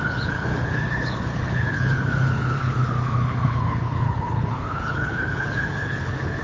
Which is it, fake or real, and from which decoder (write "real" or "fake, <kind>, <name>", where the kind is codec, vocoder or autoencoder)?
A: fake, codec, HILCodec